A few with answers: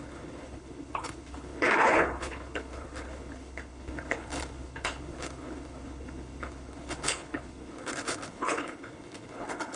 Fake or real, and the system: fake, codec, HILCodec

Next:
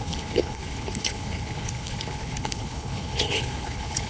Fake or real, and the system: fake, codec, HILCodec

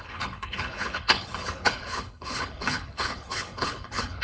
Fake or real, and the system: fake, codec, HILCodec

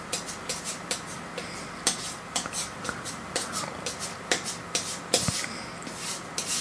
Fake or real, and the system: real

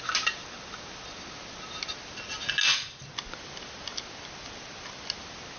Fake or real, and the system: real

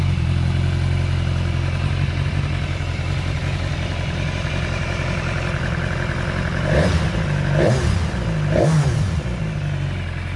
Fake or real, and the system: real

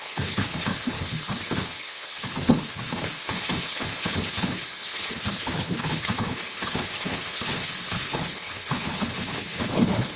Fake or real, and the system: fake, codec, HILCodec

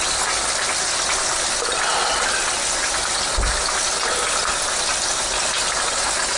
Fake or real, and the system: real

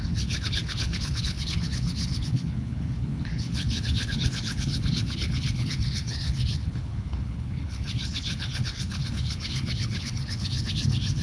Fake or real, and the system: fake, codec, HILCodec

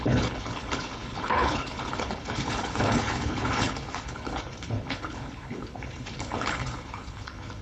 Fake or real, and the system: fake, codec, HILCodec